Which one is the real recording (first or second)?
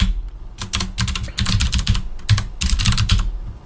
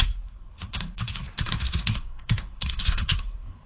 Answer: first